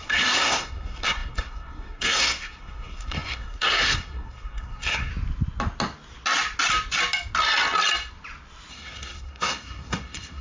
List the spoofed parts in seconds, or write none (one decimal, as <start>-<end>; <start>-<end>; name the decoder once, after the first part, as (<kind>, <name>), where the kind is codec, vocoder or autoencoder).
0.0-5.1 (codec, SNAC); 8.7-10.4